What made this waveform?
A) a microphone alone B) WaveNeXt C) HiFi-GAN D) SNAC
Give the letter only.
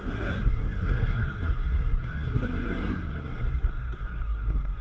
D